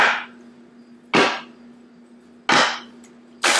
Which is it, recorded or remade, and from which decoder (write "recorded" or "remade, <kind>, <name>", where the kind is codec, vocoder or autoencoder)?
recorded